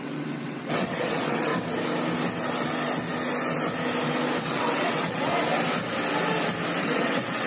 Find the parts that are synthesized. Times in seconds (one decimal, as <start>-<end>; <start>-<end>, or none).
0.0-1.5; 4.4-5.3; 6.8-7.5